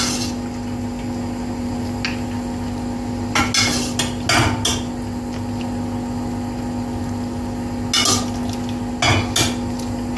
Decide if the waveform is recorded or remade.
recorded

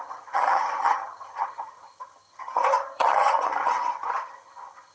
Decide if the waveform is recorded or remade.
remade